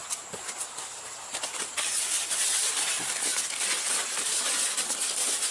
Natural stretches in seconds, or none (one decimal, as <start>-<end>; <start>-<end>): 2.9-5.5